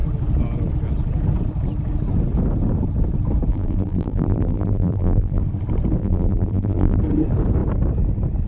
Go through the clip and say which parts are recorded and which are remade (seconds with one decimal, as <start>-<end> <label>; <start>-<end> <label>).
0.0-3.5 recorded; 3.5-5.4 remade; 5.4-6.0 recorded; 6.0-7.0 remade; 7.0-8.5 recorded